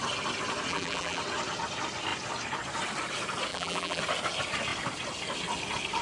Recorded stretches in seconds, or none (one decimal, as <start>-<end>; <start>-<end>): 0.0-0.7; 1.2-3.5; 4.0-6.0

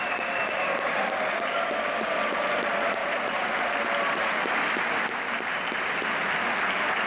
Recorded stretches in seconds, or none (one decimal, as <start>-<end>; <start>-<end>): 0.0-3.0; 3.7-7.1

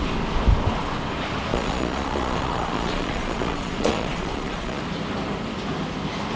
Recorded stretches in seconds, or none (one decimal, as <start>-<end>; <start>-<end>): 0.0-1.5; 4.8-6.4

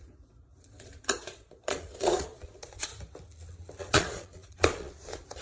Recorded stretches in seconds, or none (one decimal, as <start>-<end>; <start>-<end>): 2.9-3.8

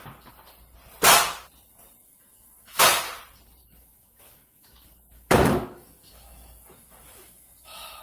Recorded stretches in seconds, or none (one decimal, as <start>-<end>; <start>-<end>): 0.0-2.0; 3.0-3.6

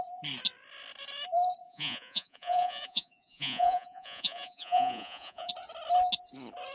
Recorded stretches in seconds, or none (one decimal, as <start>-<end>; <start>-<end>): 0.0-1.6; 5.5-6.7